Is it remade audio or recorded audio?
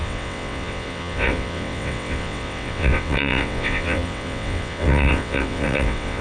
remade